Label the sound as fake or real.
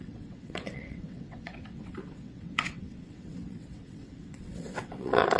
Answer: fake